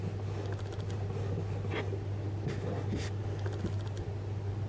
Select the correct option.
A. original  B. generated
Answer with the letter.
A